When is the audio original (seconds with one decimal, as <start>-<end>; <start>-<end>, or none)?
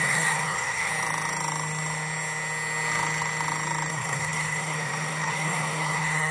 0.9-3.9